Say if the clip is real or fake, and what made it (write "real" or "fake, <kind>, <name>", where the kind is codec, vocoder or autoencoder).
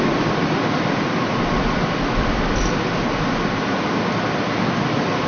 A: real